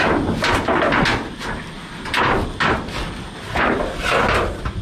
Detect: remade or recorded recorded